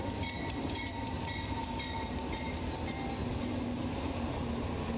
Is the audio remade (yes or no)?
no